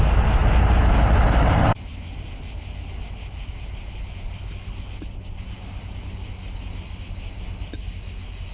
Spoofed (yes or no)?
no